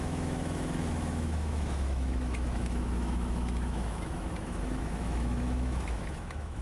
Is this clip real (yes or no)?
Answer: no